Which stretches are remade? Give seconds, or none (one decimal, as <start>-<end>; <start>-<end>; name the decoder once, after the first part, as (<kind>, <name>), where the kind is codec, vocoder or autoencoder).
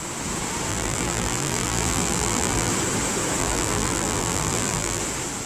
0.7-2.7 (vocoder, BigVGAN v2); 3.4-5.0